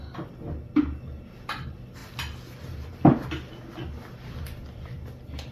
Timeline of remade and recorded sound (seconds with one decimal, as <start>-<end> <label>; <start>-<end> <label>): 0.0-5.5 recorded